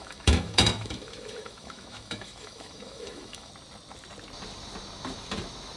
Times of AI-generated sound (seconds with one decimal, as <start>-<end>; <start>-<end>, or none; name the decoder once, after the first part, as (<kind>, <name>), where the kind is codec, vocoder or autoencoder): 0.0-3.5 (autoencoder, DAC-VAE)